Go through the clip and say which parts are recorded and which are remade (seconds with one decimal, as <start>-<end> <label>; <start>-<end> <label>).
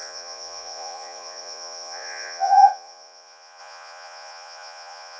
0.0-5.2 remade